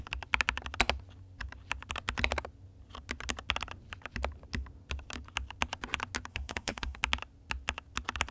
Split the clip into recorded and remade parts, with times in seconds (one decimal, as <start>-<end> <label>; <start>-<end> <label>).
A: 0.0-6.3 recorded; 6.3-7.0 remade; 7.0-8.3 recorded

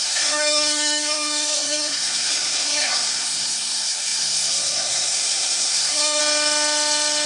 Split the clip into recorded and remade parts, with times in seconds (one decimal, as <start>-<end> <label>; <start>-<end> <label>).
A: 0.0-6.2 remade; 6.2-7.3 recorded

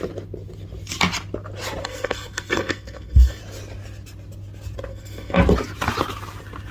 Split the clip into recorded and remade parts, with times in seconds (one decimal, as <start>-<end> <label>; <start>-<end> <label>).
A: 0.0-1.8 recorded; 1.8-3.4 remade; 3.4-4.9 recorded; 4.9-5.4 remade; 5.4-6.7 recorded

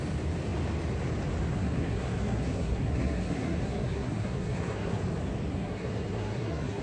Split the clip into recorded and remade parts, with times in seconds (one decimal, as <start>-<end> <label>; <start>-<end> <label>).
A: 0.0-1.5 recorded; 1.5-5.0 remade; 5.0-5.5 recorded; 5.5-6.8 remade

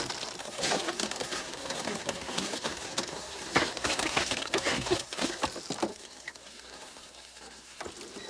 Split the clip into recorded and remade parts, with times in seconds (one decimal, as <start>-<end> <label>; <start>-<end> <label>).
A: 0.0-0.4 recorded; 0.4-5.4 remade; 5.4-5.9 recorded; 5.9-7.8 remade; 7.8-8.3 recorded